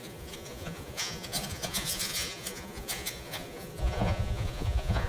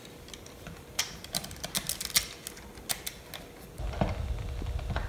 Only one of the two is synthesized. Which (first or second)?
first